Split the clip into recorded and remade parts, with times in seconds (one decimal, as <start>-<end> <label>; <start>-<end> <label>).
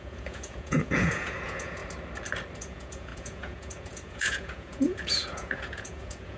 0.0-1.8 remade; 1.8-2.6 recorded; 2.6-6.4 remade